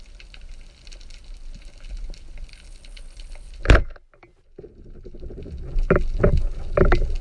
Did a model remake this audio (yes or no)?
no